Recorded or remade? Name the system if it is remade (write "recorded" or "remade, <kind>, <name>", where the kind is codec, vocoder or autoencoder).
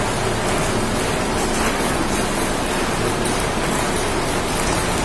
recorded